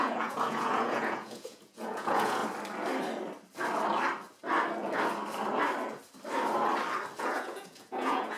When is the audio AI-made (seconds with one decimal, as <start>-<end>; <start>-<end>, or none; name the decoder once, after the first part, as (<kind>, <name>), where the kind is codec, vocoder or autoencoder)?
0.0-2.4 (vocoder, Vocos); 7.2-8.4